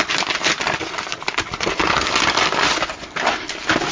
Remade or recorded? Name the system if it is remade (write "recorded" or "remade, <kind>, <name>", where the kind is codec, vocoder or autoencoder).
recorded